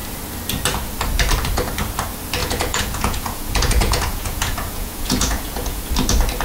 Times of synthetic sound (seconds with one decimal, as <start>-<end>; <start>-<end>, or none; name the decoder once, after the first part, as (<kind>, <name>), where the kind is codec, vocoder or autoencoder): 2.4-5.9 (vocoder, Vocos)